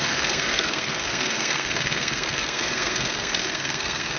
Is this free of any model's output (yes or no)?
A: no